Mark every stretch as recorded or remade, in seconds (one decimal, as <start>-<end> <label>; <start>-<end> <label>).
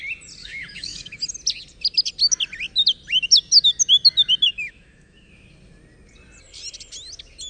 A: 0.0-0.4 recorded; 0.4-1.2 remade; 1.2-4.5 recorded; 4.5-5.3 remade; 5.3-7.5 recorded